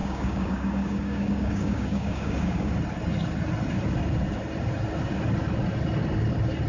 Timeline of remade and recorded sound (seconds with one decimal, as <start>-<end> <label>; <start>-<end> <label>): 0.0-2.7 remade; 2.7-6.7 recorded